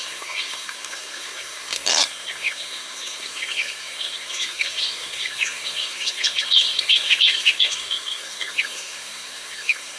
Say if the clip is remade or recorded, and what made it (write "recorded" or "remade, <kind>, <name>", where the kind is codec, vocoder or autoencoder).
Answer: remade, codec, SNAC